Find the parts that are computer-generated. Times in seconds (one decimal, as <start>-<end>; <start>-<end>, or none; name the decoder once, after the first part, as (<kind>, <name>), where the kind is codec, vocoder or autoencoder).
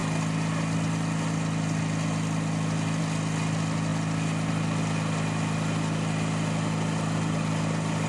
none